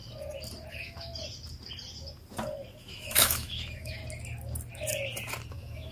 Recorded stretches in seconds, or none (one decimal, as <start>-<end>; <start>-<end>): 0.0-0.7; 1.1-2.8; 4.0-5.5